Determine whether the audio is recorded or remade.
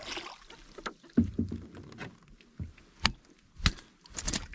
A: recorded